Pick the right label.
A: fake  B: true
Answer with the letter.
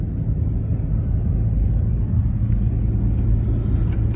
B